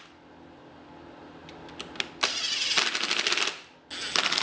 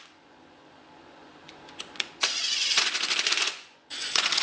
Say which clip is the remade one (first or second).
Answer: second